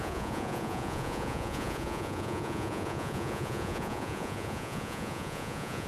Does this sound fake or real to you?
fake